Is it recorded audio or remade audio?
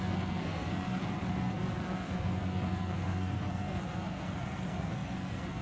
remade